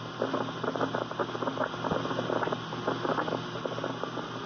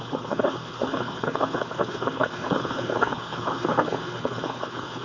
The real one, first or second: first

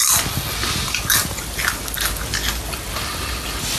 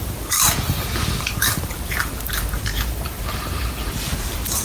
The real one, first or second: first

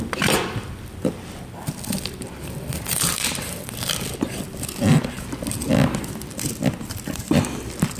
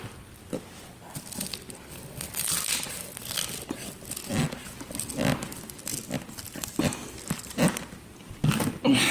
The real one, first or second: second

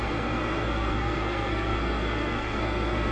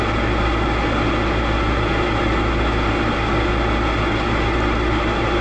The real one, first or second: second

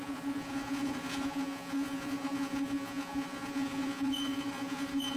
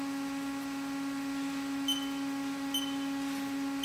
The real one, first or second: second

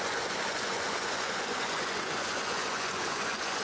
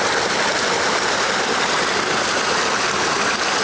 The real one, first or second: second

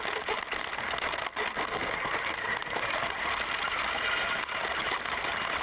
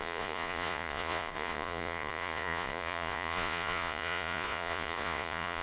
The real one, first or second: first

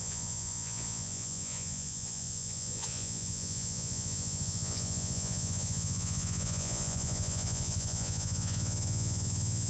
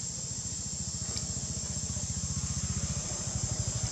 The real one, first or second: second